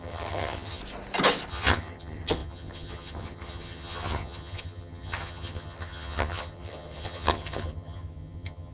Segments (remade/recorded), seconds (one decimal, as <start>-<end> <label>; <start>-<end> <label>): 0.0-0.8 remade; 0.8-1.5 recorded; 1.5-8.7 remade

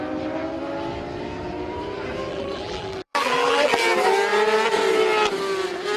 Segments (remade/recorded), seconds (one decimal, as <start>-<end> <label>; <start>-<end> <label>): 0.0-2.3 recorded; 2.3-3.8 remade; 3.8-6.0 recorded

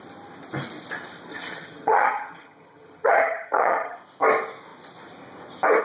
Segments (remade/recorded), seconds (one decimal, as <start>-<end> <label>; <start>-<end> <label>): 0.0-1.3 recorded; 1.3-4.0 remade; 4.0-5.8 recorded